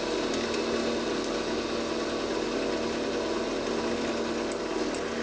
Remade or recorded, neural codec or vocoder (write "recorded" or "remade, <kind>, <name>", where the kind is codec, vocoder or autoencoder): recorded